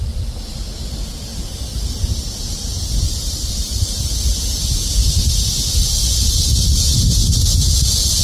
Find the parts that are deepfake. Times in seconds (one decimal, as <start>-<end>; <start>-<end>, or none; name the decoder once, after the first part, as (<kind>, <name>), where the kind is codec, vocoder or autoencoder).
none